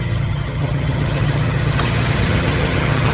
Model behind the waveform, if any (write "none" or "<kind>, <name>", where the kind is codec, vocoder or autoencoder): vocoder, HiFi-GAN